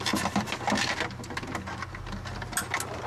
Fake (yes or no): no